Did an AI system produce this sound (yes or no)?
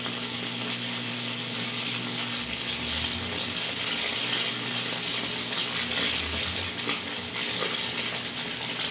no